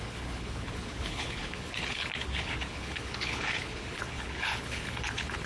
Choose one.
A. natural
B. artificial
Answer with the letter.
B